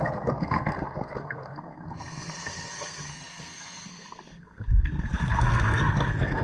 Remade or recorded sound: remade